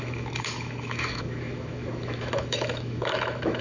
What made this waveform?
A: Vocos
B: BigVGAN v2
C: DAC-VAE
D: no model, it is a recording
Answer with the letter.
C